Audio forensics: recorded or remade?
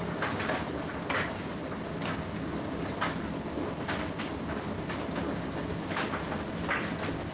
recorded